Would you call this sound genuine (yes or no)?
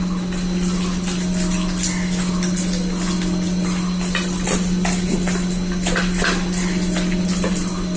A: yes